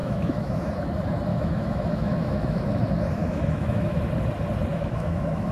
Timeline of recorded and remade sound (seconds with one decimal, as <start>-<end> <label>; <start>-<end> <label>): 0.0-0.7 remade; 0.7-1.3 recorded; 1.3-2.8 remade; 2.8-3.2 recorded; 3.2-4.0 remade; 4.0-4.7 recorded; 4.7-5.5 remade